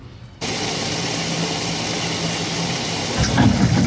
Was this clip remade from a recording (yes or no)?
no